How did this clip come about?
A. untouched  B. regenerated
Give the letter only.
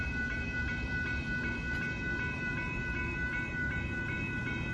B